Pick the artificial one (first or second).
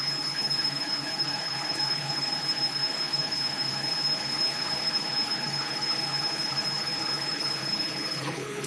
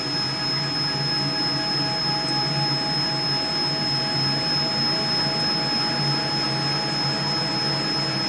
first